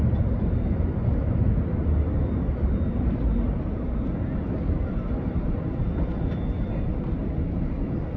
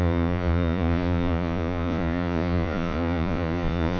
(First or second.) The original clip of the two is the first